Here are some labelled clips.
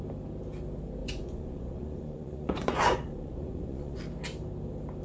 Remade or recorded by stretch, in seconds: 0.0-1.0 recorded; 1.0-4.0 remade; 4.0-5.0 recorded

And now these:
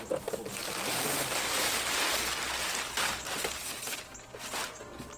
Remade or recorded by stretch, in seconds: 0.0-5.2 recorded

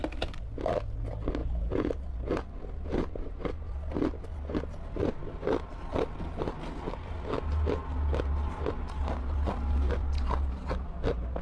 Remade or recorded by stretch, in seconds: 0.0-1.4 recorded; 1.4-1.9 remade; 1.9-11.4 recorded

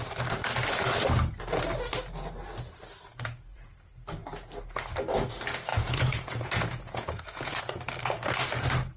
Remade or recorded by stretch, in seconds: 0.0-3.1 recorded; 3.1-3.9 remade; 3.9-5.7 recorded; 5.7-7.6 remade; 7.6-9.0 recorded

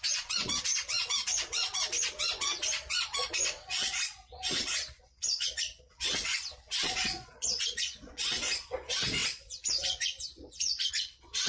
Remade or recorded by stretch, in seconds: 0.0-11.5 remade

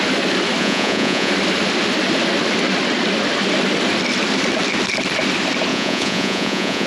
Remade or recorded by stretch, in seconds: 0.0-0.6 recorded; 0.6-1.3 remade; 1.3-5.7 recorded; 5.7-6.9 remade

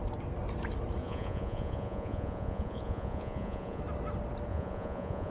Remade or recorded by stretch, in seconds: 0.0-1.0 recorded; 1.0-3.8 remade; 3.8-4.5 recorded; 4.5-5.3 remade